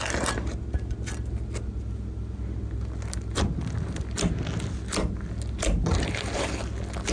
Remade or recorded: recorded